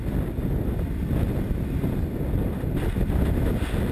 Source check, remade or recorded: recorded